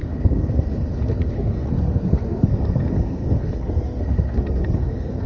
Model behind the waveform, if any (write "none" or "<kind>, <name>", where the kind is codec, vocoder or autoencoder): codec, SNAC